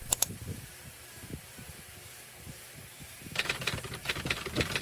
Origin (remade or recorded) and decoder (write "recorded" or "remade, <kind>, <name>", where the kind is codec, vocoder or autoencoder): remade, vocoder, BigVGAN v2